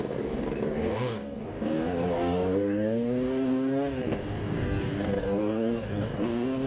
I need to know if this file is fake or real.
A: fake